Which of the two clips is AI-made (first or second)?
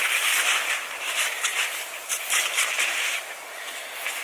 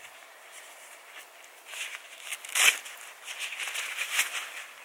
first